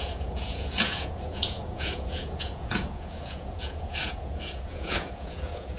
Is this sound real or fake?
fake